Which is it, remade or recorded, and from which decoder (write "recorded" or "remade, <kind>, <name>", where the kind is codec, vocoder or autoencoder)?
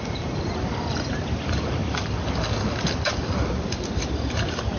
recorded